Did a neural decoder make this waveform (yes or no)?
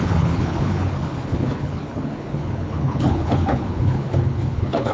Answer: yes